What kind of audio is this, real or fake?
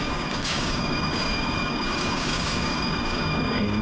fake